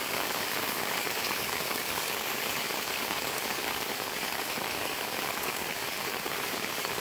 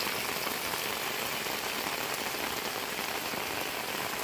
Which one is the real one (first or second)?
second